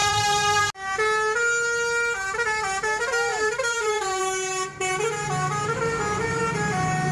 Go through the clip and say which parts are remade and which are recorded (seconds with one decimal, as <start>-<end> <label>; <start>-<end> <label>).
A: 0.0-0.6 remade; 0.6-3.3 recorded; 3.3-4.2 remade; 4.2-7.1 recorded